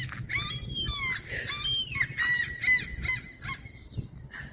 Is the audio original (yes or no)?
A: yes